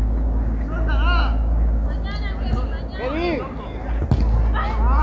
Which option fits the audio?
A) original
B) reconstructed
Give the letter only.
A